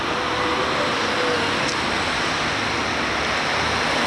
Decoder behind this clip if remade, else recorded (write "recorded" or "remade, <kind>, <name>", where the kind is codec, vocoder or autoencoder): recorded